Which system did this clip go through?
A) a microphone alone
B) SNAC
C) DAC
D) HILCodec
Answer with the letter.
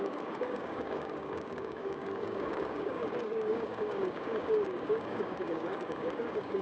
C